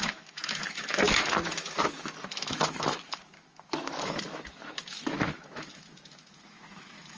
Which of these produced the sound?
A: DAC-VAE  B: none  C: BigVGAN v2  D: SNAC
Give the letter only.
A